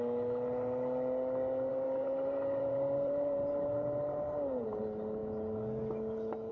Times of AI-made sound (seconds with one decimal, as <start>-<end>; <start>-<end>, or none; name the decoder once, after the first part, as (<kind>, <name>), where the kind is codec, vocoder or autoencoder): 1.7-4.8 (vocoder, BigVGAN v2)